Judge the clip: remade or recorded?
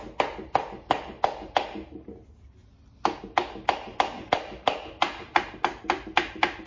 recorded